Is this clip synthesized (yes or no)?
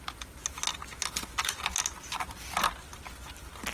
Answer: no